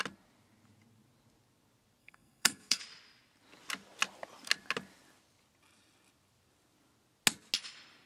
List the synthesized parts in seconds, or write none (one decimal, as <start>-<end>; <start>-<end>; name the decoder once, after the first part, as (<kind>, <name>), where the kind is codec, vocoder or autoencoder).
2.0-2.8 (codec, SNAC)